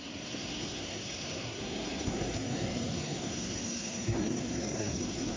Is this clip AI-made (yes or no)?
yes